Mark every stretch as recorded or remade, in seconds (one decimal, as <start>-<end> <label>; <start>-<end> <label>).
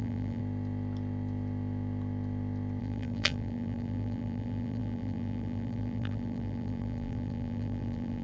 0.0-0.4 remade; 0.4-2.8 recorded; 2.8-8.2 remade